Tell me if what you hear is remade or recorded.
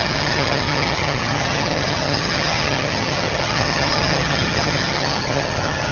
remade